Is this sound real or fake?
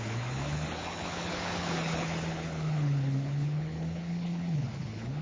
fake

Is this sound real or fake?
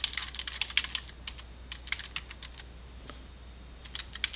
real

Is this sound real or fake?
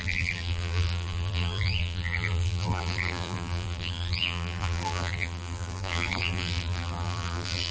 fake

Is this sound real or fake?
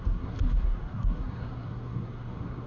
fake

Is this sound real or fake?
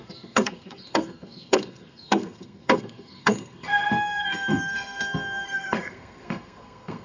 fake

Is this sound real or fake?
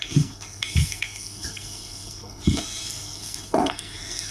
fake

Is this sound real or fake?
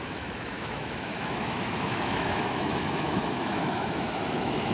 fake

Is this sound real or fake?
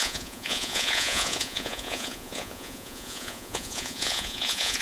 fake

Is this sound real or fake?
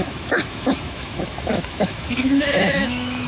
fake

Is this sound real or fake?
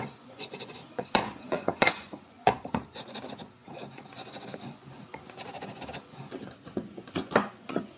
fake